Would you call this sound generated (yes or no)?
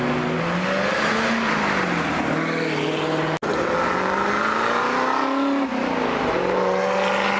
no